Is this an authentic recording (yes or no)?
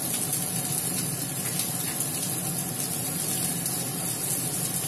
yes